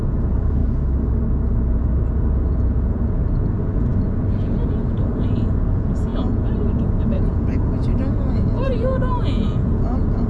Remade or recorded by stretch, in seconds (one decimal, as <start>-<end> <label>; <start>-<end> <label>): 0.0-0.6 remade; 0.6-1.7 recorded; 1.7-10.3 remade